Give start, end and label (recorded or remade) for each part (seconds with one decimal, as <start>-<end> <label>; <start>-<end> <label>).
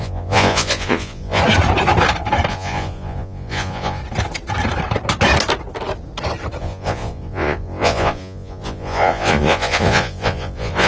0.0-1.4 remade; 1.4-2.5 recorded; 2.5-4.0 remade; 4.0-6.6 recorded; 6.6-10.9 remade